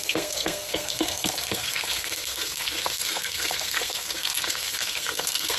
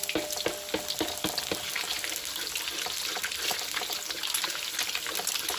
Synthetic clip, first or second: first